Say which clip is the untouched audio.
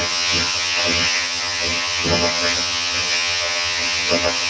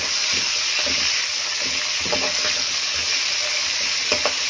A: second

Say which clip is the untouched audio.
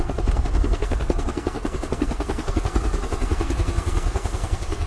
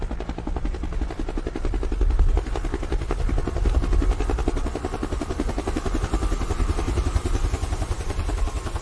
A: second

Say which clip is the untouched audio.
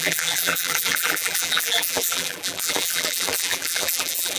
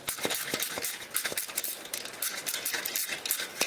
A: second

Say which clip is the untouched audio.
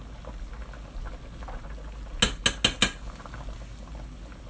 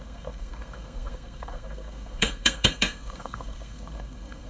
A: first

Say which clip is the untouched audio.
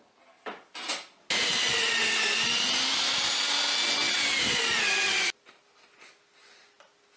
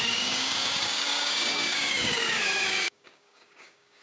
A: first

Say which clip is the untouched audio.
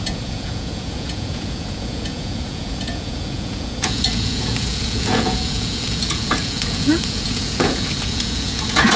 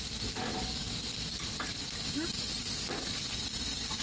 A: second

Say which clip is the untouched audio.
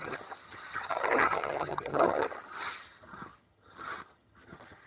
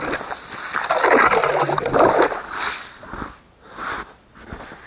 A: second